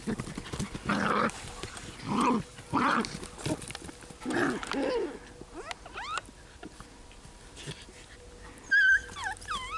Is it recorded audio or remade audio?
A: recorded